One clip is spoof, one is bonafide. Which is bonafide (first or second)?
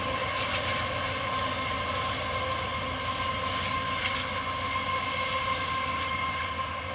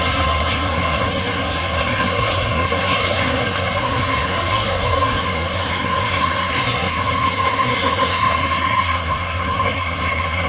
first